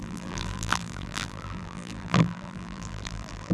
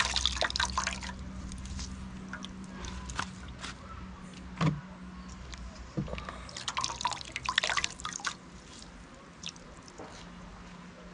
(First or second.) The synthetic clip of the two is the first